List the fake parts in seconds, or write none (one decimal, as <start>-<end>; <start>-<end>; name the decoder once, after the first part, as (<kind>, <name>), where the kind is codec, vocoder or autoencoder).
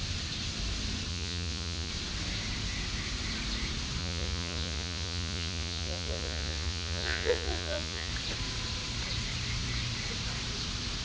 1.1-1.9 (vocoder, Vocos); 4.0-8.1